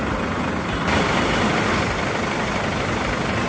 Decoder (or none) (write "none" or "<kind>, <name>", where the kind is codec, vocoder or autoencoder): none